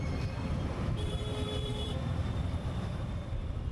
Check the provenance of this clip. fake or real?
fake